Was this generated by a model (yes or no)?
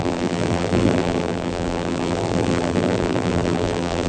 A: yes